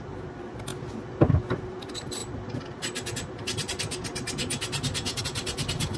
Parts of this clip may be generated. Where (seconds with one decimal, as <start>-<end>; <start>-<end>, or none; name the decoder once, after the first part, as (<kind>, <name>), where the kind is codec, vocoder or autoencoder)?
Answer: none